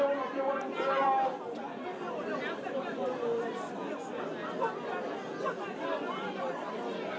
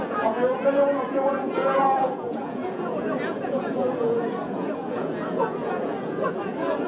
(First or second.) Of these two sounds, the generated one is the second